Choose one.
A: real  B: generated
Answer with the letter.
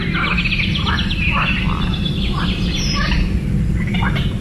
A